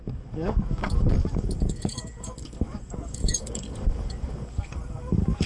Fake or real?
fake